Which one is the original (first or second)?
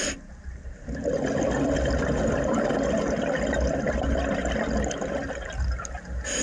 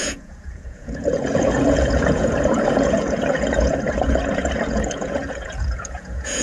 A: first